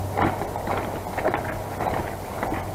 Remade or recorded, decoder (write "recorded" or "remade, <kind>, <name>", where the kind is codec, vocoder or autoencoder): recorded